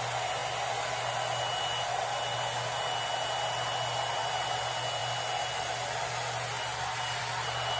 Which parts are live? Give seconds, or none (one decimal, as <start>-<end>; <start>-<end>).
0.0-7.8